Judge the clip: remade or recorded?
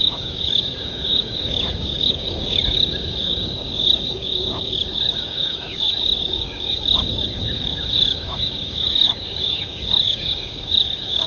remade